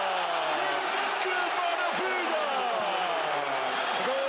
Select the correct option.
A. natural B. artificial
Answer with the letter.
A